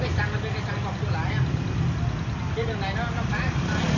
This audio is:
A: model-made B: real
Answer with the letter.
B